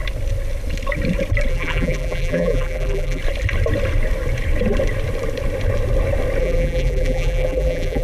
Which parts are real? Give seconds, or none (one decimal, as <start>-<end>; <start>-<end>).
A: 0.0-1.5; 3.2-6.4